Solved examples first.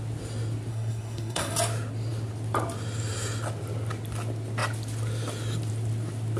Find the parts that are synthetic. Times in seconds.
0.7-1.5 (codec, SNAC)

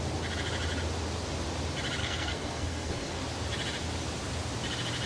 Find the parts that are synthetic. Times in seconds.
2.0-3.2 (codec, SNAC)

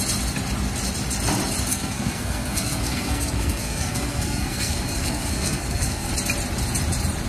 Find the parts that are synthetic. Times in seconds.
1.7-6.1 (codec, SNAC)

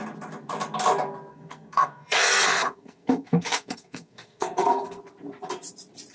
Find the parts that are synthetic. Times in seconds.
1.3-5.0 (codec, SNAC)

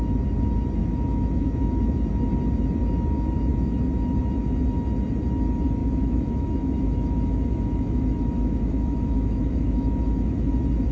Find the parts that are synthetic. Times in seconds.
0.8-1.8 (autoencoder, DAC-VAE); 5.8-10.5